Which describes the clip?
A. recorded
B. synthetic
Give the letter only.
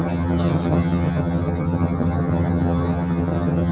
B